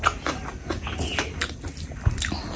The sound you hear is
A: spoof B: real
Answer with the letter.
B